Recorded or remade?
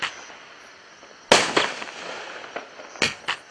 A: recorded